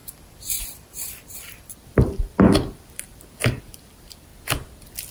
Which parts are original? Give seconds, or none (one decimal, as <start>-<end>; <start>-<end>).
4.3-5.1